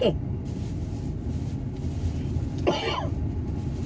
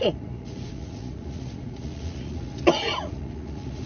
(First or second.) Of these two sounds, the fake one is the second